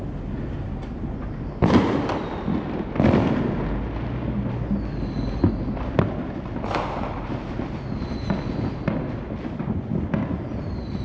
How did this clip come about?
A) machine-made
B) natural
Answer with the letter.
B